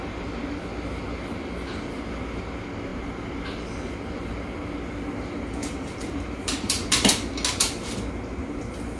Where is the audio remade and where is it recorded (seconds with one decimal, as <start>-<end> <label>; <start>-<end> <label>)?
0.0-5.6 recorded; 5.6-7.1 remade; 7.1-9.0 recorded